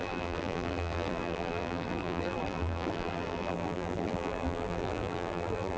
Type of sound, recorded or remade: remade